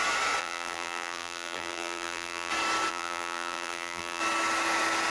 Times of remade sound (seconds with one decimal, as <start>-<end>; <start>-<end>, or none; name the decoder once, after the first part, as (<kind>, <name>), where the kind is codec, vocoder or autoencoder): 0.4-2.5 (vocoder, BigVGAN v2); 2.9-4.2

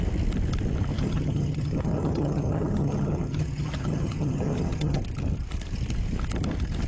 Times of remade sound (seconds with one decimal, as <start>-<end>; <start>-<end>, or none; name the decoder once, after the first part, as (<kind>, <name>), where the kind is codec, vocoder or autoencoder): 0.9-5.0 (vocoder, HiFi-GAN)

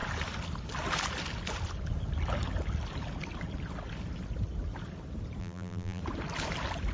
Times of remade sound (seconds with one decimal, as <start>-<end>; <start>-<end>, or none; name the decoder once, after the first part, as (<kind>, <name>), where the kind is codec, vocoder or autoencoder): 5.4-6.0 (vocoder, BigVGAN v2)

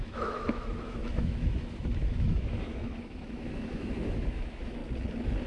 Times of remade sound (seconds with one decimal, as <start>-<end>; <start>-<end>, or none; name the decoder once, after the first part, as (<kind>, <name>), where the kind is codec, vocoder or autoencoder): 0.0-4.8 (autoencoder, DAC-VAE)